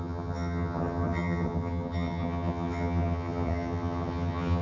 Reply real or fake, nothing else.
fake